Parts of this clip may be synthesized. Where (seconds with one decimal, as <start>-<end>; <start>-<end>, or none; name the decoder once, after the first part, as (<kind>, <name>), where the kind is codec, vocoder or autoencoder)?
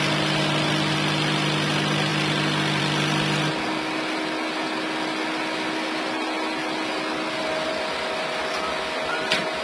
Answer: none